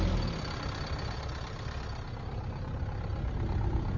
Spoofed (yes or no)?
no